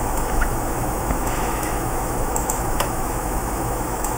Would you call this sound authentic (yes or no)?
no